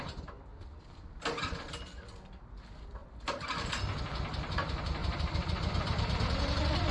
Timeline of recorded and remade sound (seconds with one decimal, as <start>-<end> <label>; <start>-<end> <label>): 0.0-0.5 recorded; 0.5-2.1 remade; 2.1-5.0 recorded; 5.0-5.7 remade; 5.7-6.9 recorded